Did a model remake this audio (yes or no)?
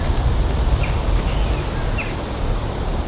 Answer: no